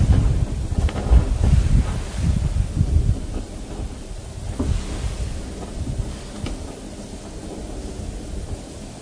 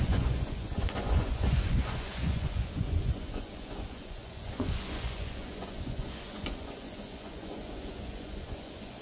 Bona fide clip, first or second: first